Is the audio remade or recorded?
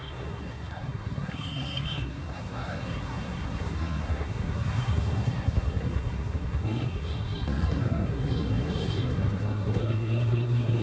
remade